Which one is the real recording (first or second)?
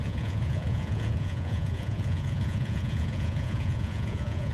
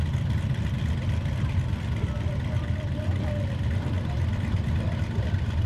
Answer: second